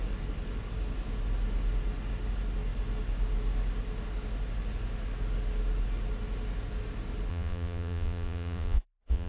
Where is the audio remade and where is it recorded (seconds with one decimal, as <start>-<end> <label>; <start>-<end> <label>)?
0.0-7.3 recorded; 7.3-9.3 remade